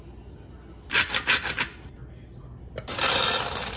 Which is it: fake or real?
real